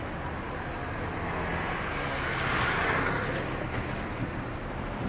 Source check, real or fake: real